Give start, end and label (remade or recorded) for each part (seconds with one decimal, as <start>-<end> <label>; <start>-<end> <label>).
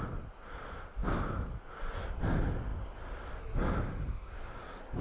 0.0-1.0 recorded; 1.0-1.6 remade; 1.6-5.0 recorded